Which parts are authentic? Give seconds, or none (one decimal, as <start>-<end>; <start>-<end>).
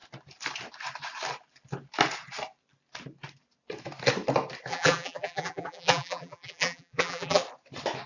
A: 0.0-4.7; 7.4-8.1